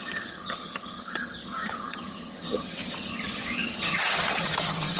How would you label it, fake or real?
fake